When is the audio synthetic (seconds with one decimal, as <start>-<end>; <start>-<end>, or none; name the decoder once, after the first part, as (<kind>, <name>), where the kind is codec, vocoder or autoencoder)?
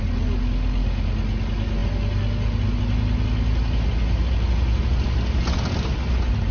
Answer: none